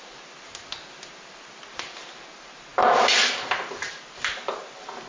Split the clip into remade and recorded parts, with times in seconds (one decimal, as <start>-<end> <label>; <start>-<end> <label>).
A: 0.0-5.1 recorded